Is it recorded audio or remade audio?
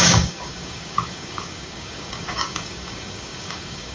remade